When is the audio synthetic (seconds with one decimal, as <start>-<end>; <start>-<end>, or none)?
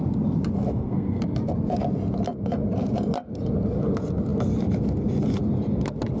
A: 0.7-1.2